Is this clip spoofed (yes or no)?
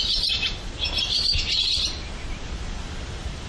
no